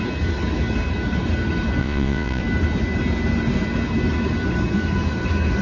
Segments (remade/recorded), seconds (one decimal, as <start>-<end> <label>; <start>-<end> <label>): 0.0-1.8 recorded; 1.8-2.4 remade; 2.4-5.6 recorded